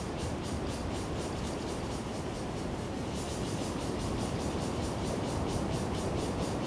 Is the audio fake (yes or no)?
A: yes